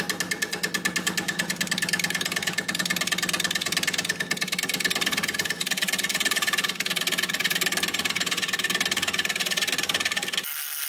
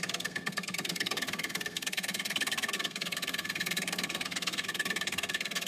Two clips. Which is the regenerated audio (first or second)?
second